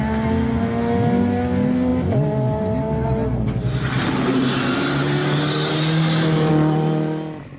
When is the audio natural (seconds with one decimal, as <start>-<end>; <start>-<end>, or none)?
0.0-7.6